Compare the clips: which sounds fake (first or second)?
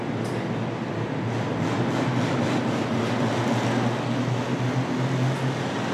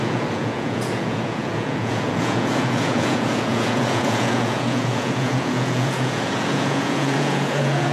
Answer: second